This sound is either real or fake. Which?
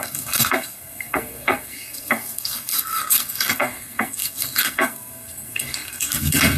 fake